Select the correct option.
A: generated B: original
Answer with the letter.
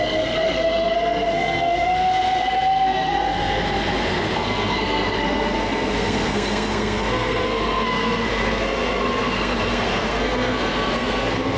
A